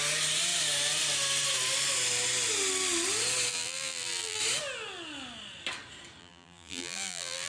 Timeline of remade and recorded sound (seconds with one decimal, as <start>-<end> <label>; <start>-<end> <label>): 0.0-3.5 recorded; 3.5-4.4 remade; 4.4-6.2 recorded; 6.2-7.5 remade